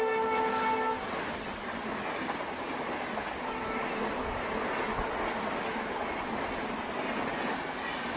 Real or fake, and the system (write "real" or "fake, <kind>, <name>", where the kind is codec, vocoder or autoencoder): real